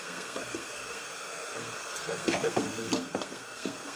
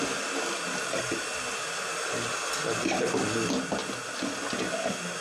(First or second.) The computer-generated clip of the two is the first